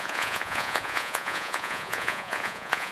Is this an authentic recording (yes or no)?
no